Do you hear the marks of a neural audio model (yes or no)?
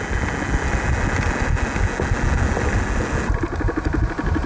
no